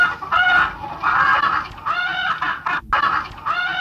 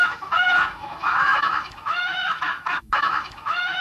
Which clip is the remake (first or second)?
second